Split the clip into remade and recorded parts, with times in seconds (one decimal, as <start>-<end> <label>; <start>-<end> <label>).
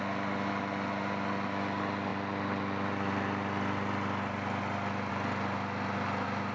0.0-6.5 recorded